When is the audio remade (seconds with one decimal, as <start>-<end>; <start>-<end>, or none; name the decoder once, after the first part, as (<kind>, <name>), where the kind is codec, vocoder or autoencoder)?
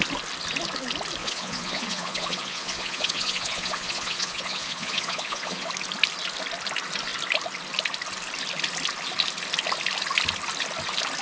1.2-5.7 (vocoder, Vocos)